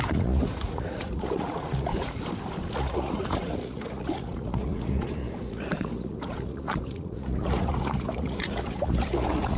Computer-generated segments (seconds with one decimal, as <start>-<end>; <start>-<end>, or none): 0.0-2.2; 2.7-9.6

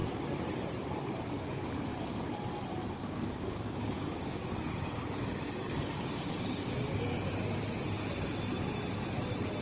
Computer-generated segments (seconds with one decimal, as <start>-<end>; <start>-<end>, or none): 3.0-6.8

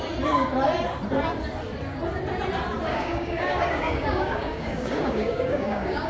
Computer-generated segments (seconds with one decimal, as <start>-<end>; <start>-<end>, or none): 2.9-6.1

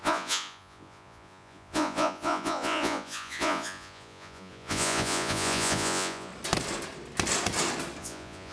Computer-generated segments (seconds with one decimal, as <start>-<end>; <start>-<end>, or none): 0.0-6.3; 8.0-8.5

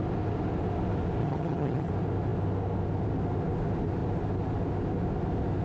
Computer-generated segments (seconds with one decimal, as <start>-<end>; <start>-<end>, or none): 1.2-1.9